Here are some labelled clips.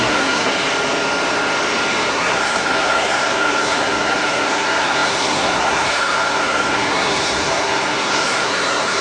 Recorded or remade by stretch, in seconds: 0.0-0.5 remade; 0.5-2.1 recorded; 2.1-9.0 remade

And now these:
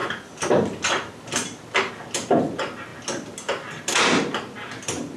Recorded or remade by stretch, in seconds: 0.0-5.2 recorded